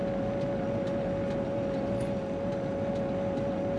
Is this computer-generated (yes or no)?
no